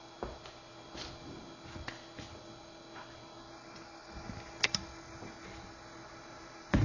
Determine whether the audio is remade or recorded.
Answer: recorded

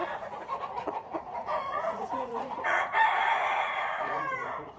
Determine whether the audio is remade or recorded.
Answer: remade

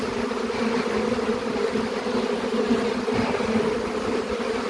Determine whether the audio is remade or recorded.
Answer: recorded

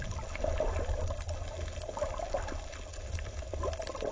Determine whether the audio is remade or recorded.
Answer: recorded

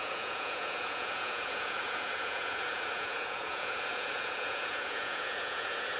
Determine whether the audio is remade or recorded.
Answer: remade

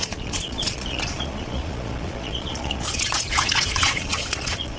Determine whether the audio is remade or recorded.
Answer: remade